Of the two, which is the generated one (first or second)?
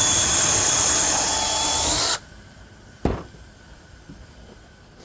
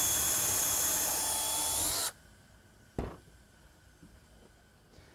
first